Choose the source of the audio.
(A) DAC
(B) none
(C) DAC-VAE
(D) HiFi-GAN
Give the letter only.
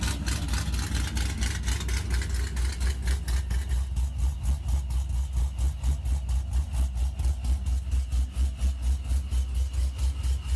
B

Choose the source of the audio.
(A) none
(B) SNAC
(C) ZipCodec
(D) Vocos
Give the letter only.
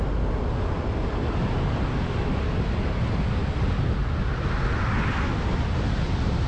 A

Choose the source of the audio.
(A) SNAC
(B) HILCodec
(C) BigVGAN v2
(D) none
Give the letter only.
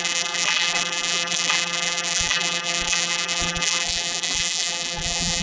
C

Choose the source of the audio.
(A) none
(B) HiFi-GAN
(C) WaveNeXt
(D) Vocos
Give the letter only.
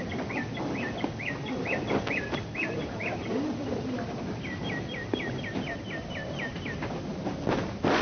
A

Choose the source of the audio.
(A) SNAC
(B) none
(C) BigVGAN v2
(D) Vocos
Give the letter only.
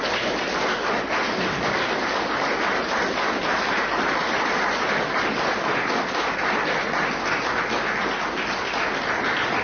B